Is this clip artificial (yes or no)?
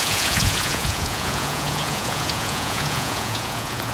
yes